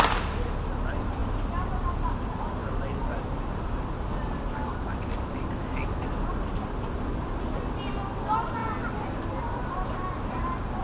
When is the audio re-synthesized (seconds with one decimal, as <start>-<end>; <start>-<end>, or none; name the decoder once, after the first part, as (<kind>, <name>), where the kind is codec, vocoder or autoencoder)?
none